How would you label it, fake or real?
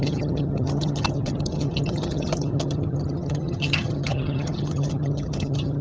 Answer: fake